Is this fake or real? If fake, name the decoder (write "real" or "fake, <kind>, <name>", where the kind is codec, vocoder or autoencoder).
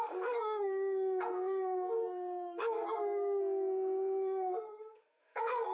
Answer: fake, codec, SNAC